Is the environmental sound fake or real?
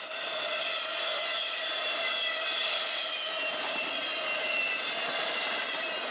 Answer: real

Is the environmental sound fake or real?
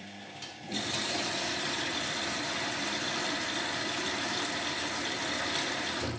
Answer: fake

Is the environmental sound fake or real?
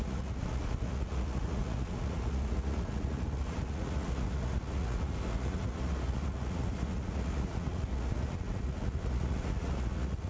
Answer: fake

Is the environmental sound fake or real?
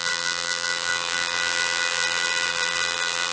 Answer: fake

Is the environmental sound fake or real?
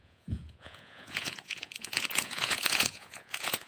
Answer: fake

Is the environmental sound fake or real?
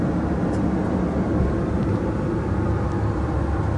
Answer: real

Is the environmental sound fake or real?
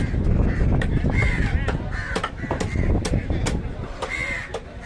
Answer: real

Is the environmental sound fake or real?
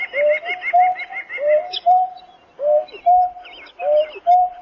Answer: real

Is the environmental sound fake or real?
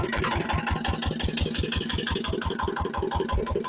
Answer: real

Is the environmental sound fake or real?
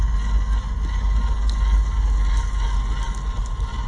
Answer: real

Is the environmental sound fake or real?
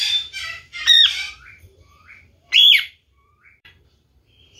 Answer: fake